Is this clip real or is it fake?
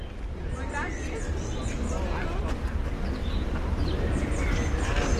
real